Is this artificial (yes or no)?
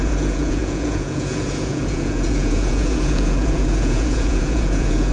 yes